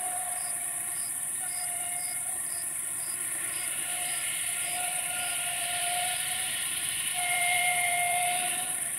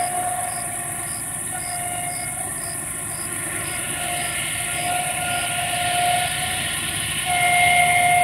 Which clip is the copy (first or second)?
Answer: first